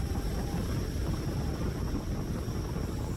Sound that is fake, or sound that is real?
real